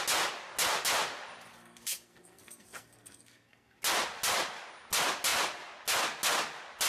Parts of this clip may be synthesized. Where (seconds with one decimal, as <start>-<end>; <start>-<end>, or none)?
1.5-3.8